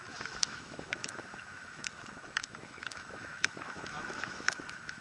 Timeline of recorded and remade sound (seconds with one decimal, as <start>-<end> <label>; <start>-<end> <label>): 0.0-5.0 remade